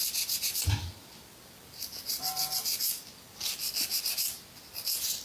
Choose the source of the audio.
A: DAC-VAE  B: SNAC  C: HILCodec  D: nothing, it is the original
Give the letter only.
D